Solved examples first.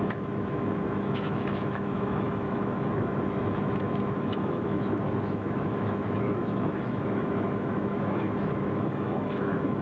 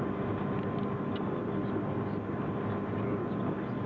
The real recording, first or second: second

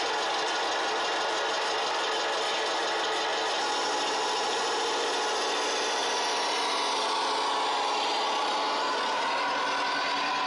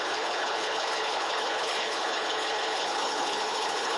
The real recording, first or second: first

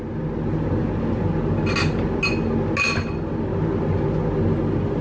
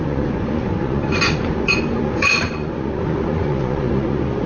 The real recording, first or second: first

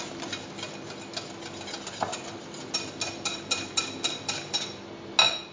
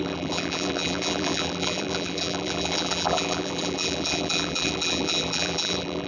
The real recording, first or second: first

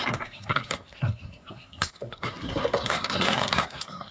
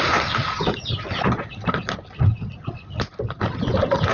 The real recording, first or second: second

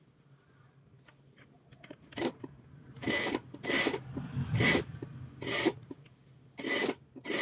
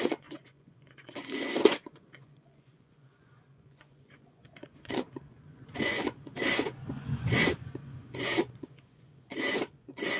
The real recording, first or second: first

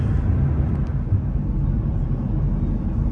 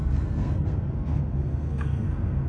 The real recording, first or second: first